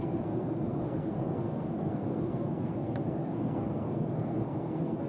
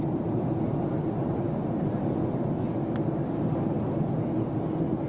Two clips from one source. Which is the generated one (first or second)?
first